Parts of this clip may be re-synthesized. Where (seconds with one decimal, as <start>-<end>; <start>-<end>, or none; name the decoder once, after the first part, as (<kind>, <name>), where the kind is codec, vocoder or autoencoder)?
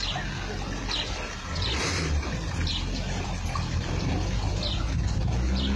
1.8-4.8 (vocoder, BigVGAN v2)